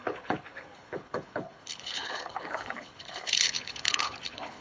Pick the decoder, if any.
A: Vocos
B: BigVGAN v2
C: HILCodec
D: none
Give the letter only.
C